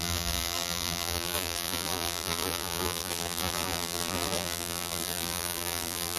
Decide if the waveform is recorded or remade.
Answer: remade